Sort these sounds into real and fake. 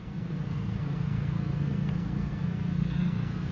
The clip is fake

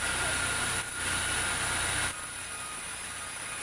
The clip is real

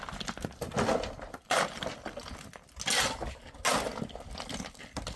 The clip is real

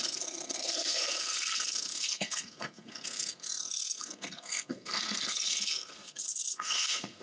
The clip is fake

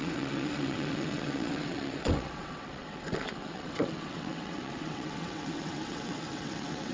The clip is fake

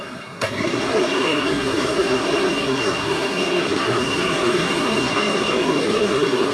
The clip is fake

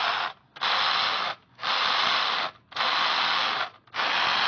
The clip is real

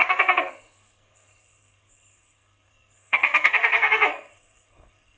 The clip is fake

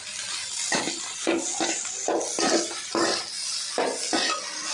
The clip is real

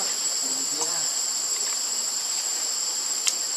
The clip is fake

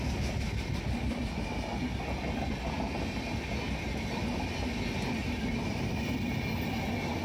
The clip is real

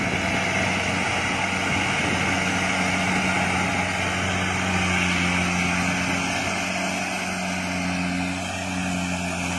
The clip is real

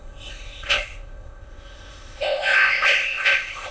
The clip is fake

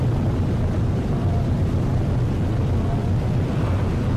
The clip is real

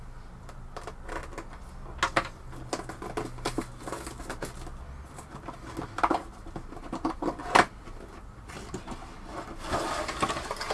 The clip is real